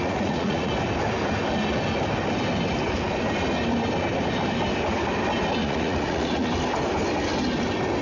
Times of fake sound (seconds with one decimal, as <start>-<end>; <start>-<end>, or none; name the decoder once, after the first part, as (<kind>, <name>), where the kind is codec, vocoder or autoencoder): 0.0-0.7 (vocoder, Vocos); 5.6-6.5